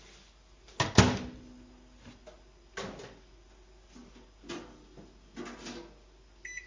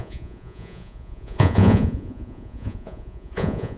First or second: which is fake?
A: second